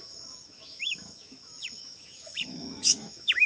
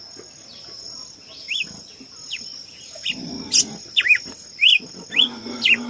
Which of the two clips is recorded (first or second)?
second